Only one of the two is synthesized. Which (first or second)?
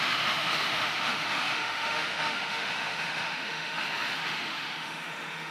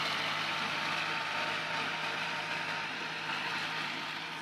first